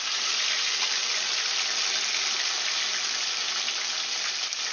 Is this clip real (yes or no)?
yes